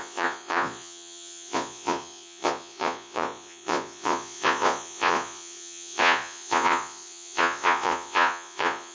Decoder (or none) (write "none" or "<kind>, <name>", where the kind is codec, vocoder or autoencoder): vocoder, Vocos